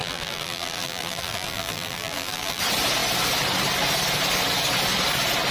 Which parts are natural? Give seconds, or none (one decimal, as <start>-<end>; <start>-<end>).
2.6-5.5